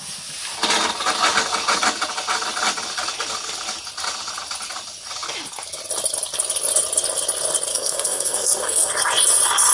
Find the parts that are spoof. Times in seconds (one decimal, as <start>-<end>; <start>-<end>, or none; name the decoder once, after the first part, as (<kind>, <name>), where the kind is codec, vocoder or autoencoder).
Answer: 7.7-8.9 (codec, SNAC)